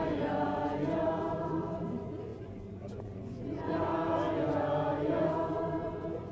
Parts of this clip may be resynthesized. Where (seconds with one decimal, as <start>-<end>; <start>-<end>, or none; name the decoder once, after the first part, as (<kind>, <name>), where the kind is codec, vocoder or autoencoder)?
0.0-3.9 (vocoder, Vocos); 5.0-6.3